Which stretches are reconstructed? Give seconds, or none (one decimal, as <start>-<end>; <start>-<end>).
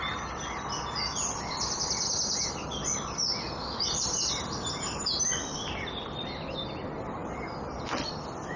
none